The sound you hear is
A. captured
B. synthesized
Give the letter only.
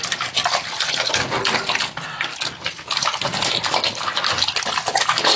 A